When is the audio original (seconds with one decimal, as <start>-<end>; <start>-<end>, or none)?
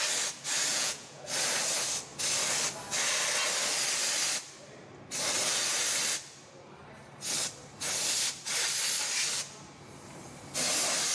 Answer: 0.0-0.7; 1.2-11.1